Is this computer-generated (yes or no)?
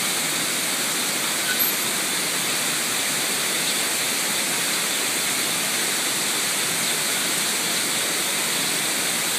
no